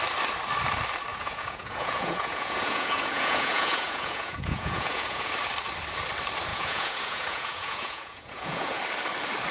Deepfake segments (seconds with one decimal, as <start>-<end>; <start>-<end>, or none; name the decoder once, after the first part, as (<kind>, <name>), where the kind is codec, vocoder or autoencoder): 1.1-5.3 (vocoder, Vocos); 6.5-8.8